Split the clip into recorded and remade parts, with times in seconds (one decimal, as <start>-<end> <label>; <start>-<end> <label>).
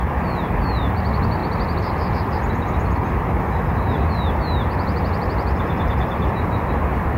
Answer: 0.0-1.4 recorded; 1.4-2.1 remade; 2.1-7.2 recorded